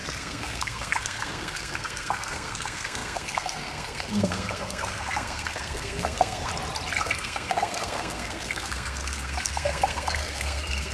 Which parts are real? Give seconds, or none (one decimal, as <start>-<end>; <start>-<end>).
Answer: 6.5-7.0